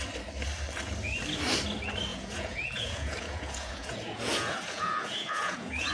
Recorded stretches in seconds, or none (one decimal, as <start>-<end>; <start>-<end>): 0.0-2.1